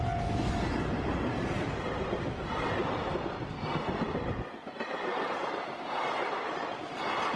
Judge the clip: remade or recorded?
recorded